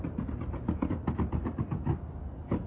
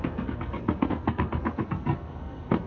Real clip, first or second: first